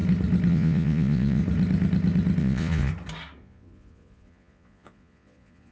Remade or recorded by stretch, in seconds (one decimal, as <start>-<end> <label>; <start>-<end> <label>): 0.0-0.5 recorded; 0.5-1.4 remade; 1.4-2.4 recorded; 2.4-2.9 remade; 2.9-3.4 recorded; 3.4-5.7 remade